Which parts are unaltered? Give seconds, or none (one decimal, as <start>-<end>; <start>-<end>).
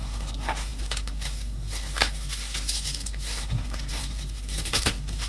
none